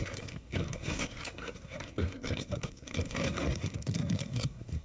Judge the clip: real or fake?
fake